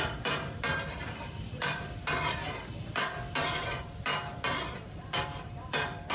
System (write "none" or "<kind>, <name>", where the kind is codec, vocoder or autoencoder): vocoder, BigVGAN v2